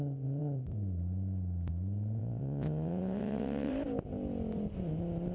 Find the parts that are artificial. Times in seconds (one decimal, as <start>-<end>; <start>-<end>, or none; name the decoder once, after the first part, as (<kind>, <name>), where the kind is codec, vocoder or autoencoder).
2.2-3.7 (vocoder, WaveNeXt)